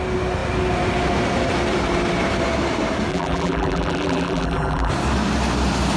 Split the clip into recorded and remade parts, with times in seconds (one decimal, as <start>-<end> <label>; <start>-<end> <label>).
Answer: 0.0-3.1 recorded; 3.1-4.9 remade; 4.9-6.0 recorded